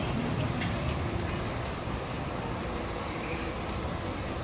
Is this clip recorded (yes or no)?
yes